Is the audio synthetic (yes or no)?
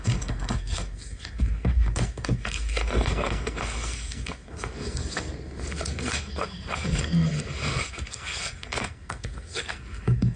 yes